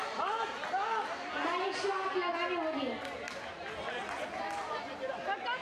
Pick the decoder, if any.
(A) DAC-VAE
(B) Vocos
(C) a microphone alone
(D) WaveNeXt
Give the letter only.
C